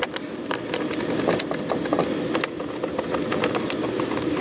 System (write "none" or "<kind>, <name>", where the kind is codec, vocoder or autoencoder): none